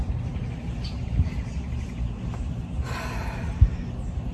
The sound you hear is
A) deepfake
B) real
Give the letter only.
B